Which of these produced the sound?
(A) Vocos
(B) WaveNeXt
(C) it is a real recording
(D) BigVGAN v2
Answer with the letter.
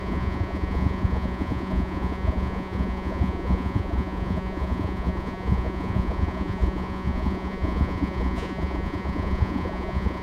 A